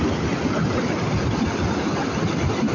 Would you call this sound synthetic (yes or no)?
no